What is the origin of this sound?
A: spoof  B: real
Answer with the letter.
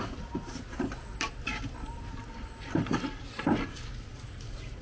B